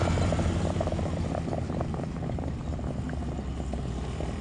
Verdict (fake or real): real